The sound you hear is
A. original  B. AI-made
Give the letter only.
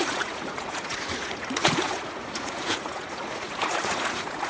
B